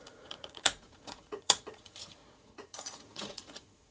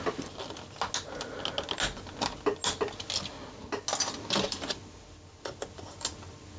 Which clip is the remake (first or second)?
first